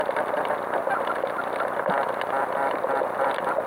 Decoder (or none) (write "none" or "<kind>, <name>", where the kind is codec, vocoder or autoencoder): none